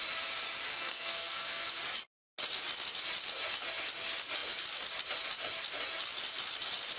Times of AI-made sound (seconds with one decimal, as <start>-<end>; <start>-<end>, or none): 0.7-1.8